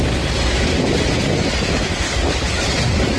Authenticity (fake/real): real